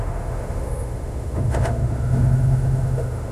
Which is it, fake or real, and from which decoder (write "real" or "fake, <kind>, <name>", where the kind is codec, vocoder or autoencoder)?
fake, autoencoder, DAC-VAE